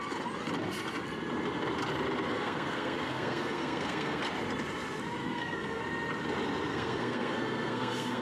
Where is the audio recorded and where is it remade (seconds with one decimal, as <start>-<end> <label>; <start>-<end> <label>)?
0.0-2.3 recorded; 2.3-4.2 remade; 4.2-5.2 recorded; 5.2-5.8 remade; 5.8-6.7 recorded; 6.7-8.2 remade